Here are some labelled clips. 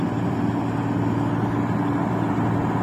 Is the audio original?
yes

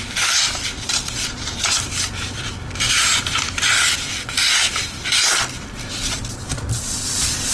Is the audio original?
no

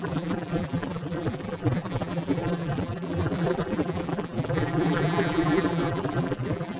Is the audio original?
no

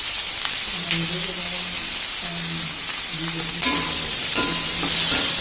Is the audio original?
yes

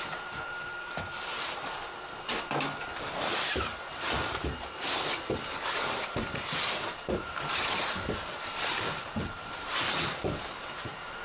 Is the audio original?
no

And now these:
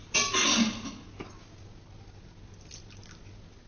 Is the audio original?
yes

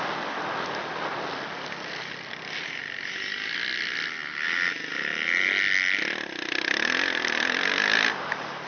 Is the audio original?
yes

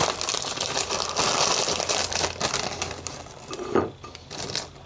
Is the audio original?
yes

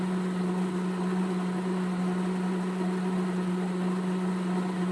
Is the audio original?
yes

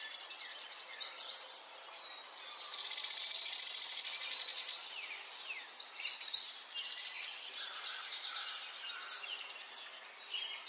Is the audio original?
no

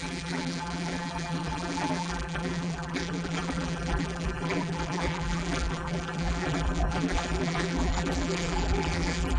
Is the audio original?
no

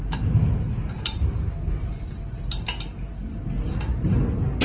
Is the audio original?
yes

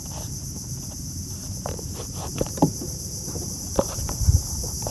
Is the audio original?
no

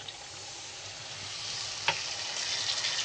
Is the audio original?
yes